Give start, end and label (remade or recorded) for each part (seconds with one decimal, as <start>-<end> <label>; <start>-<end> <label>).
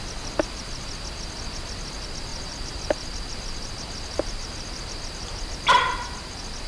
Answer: 0.0-6.7 recorded